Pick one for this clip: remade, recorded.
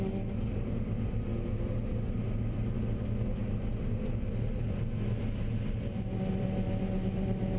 recorded